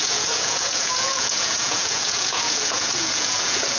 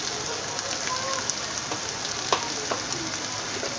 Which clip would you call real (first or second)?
second